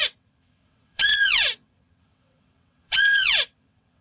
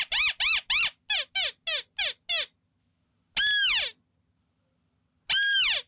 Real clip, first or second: second